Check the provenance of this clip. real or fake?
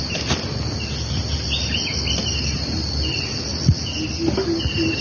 real